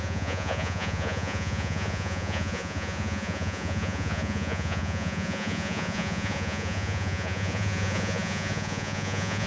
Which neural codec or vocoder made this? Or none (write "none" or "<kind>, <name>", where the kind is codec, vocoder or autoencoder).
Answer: vocoder, Vocos